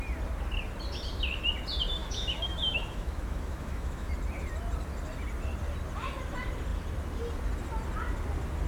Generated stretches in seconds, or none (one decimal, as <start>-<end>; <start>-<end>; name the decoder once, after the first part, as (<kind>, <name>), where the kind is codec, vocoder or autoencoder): 2.0-4.1 (autoencoder, DAC-VAE)